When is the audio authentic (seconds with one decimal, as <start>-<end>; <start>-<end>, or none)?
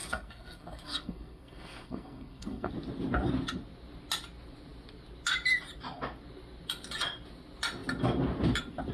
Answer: 2.7-8.9